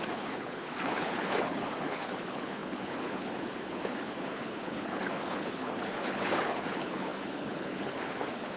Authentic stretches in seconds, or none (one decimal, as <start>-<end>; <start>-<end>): none